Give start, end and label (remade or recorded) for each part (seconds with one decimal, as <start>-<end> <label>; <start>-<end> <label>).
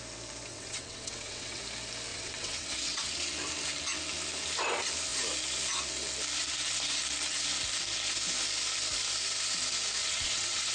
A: 0.0-0.5 recorded; 0.5-1.6 remade; 1.6-2.1 recorded; 2.1-3.1 remade; 3.1-10.0 recorded; 10.0-10.7 remade